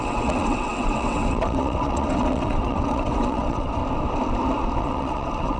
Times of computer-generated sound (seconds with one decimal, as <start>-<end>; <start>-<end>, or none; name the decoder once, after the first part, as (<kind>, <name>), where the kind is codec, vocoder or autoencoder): 0.0-3.8 (vocoder, WaveNeXt); 4.8-5.6